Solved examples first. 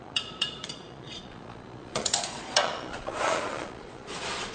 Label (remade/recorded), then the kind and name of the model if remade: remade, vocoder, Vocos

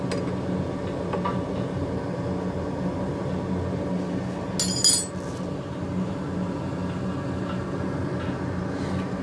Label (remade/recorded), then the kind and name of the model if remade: recorded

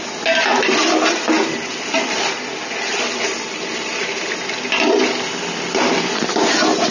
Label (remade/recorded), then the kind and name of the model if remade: recorded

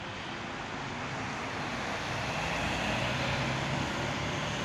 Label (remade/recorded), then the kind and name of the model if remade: recorded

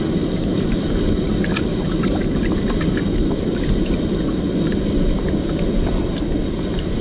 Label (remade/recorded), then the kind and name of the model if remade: recorded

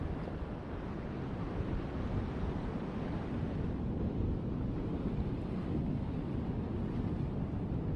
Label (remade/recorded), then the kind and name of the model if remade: recorded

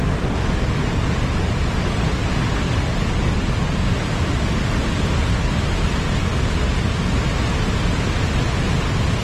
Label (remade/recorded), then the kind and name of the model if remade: recorded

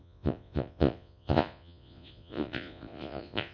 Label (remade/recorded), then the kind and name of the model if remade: remade, vocoder, Vocos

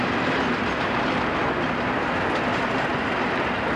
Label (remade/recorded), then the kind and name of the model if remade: recorded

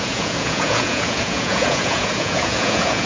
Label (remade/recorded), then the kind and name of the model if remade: remade, vocoder, Vocos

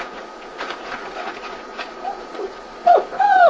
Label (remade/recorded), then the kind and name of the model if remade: remade, vocoder, Vocos